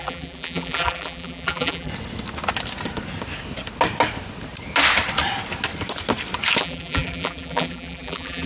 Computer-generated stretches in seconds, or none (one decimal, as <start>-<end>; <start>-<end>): 0.0-1.9; 6.6-8.5